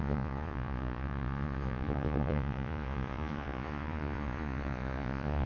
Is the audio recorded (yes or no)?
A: no